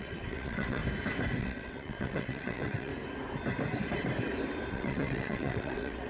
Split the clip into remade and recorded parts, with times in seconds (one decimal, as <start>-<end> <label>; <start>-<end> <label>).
0.0-0.8 remade; 0.8-1.4 recorded; 1.4-2.9 remade; 2.9-4.7 recorded; 4.7-6.1 remade